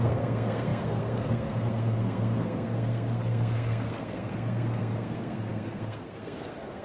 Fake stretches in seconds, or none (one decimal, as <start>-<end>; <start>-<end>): 0.0-6.8